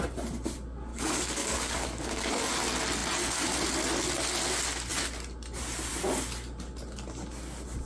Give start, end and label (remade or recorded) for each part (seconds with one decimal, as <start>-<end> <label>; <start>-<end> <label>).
0.0-0.9 recorded; 0.9-2.4 remade; 2.4-7.9 recorded